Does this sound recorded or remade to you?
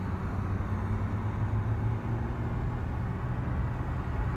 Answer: recorded